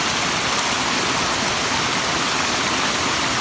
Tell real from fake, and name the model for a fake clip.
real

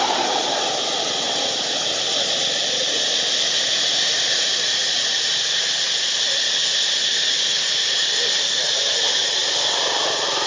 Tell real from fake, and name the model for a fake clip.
real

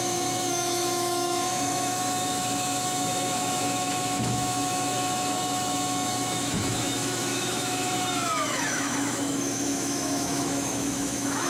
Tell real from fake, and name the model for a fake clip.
fake, autoencoder, DAC-VAE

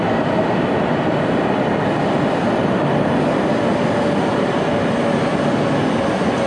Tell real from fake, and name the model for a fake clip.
real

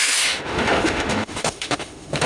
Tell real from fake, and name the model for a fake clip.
fake, autoencoder, DAC-VAE